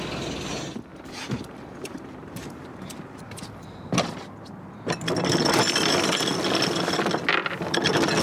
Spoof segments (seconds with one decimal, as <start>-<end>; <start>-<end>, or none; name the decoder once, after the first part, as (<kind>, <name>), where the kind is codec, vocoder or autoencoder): 0.9-3.2 (vocoder, BigVGAN v2)